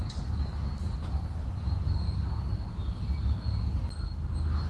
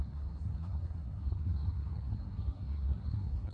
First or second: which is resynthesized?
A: second